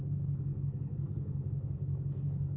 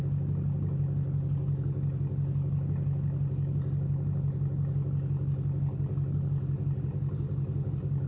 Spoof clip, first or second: first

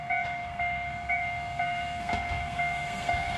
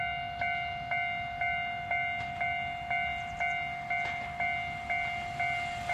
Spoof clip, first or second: first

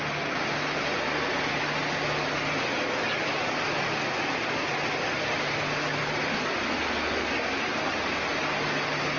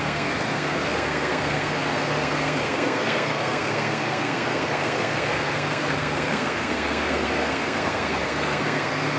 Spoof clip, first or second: second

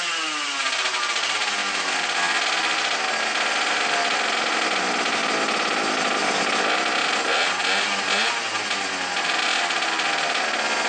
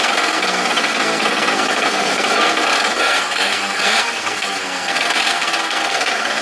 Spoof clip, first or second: second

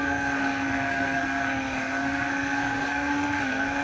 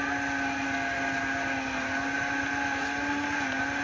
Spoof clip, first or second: first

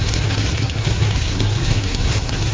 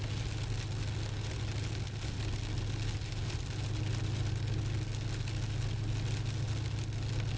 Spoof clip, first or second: first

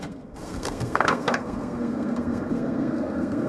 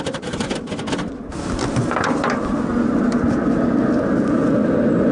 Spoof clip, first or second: first